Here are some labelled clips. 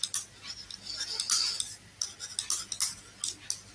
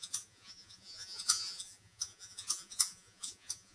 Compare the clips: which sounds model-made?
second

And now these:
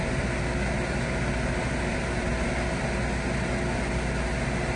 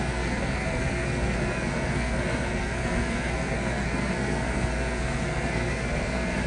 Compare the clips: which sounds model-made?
second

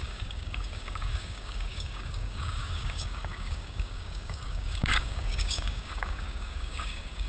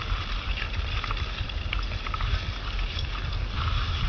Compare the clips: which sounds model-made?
first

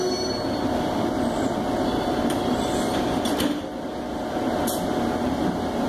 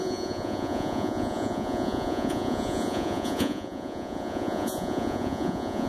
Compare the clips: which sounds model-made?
second